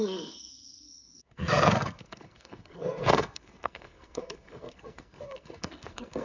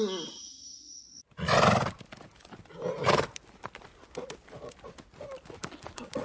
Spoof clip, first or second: first